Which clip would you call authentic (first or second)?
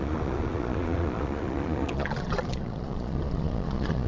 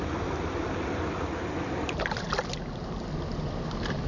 second